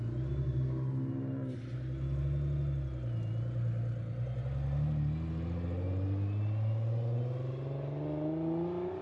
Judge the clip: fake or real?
real